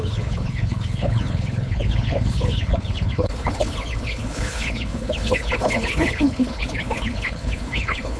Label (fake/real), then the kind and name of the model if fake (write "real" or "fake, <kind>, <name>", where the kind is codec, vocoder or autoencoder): fake, codec, HILCodec